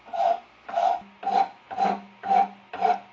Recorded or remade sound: recorded